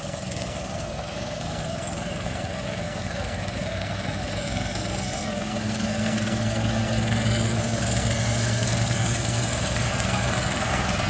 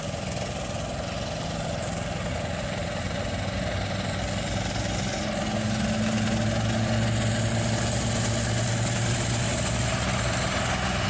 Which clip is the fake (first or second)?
first